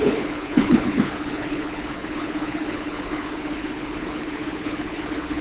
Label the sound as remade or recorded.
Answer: remade